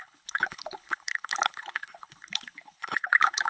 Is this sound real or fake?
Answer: fake